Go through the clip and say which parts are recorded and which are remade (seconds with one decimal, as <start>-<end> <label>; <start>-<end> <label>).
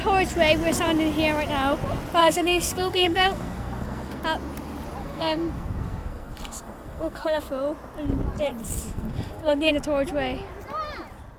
0.0-2.2 recorded; 2.2-4.2 remade; 4.2-5.0 recorded; 5.0-7.4 remade; 7.4-8.6 recorded; 8.6-9.7 remade; 9.7-11.4 recorded